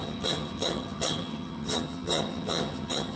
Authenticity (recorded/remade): remade